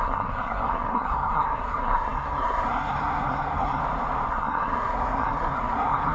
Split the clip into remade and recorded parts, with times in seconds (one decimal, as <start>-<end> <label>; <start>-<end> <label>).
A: 0.0-3.8 remade; 3.8-4.3 recorded; 4.3-6.1 remade